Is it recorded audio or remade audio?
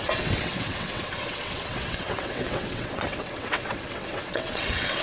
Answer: remade